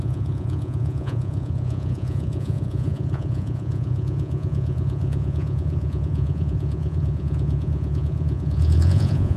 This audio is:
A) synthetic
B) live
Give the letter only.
A